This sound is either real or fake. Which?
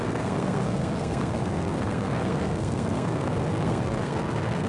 fake